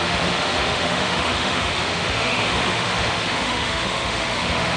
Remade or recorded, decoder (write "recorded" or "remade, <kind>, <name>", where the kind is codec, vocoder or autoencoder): remade, autoencoder, DAC-VAE